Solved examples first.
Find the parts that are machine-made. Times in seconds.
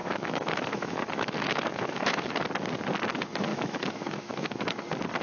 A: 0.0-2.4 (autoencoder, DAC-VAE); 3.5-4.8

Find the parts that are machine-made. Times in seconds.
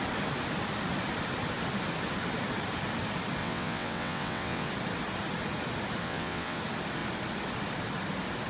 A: 3.4-4.7 (vocoder, WaveNeXt); 6.0-6.6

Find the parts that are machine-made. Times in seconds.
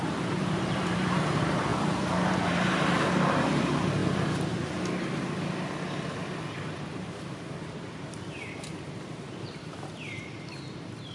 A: 0.0-4.0 (vocoder, BigVGAN v2); 6.5-11.1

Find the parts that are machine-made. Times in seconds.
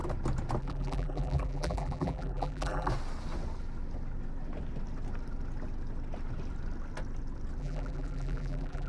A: 0.6-2.9 (vocoder, BigVGAN v2); 7.6-8.9